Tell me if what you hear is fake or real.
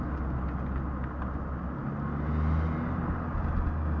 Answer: real